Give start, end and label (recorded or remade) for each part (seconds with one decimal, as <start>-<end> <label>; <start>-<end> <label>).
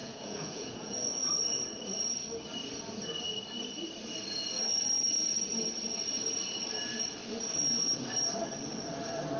0.0-1.2 remade; 1.2-9.4 recorded